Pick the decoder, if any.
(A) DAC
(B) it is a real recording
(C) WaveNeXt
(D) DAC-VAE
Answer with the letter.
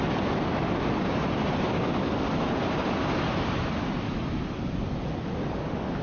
B